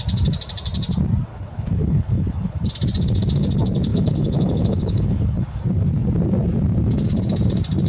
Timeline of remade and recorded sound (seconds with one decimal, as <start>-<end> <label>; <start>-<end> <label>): 0.0-1.3 recorded; 1.3-2.7 remade; 2.7-3.9 recorded; 3.9-5.6 remade; 5.6-7.9 recorded